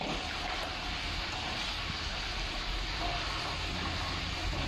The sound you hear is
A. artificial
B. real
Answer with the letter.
B